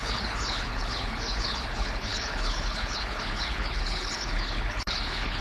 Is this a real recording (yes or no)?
no